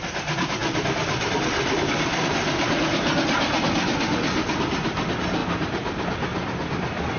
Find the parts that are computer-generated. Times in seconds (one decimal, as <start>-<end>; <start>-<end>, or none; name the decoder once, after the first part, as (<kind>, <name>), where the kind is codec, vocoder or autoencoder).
none

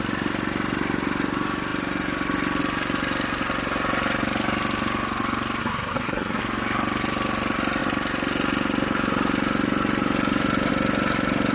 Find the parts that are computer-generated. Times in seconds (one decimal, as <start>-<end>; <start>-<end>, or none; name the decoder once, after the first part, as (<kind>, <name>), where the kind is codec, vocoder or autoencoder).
5.6-6.4 (codec, SNAC)

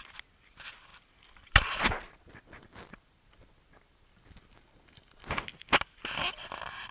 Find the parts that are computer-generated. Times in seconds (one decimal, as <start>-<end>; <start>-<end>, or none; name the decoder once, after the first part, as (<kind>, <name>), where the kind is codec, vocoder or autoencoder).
none

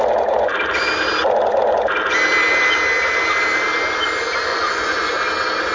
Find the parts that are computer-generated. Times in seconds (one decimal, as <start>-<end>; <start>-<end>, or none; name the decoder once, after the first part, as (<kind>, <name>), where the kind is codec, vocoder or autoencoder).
4.5-5.1 (vocoder, Vocos)

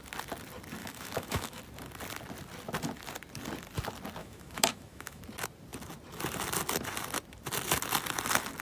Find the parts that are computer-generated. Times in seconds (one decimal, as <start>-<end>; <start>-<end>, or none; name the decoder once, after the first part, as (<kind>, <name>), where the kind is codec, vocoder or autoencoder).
0.8-1.6 (autoencoder, DAC-VAE); 4.2-5.2